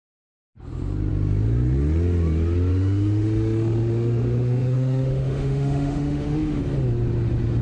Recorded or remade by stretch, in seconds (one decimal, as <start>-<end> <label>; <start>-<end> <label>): 0.0-2.7 recorded; 2.7-6.6 remade; 6.6-7.6 recorded